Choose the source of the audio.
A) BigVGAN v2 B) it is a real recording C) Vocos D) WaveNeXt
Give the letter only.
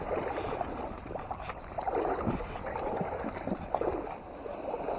B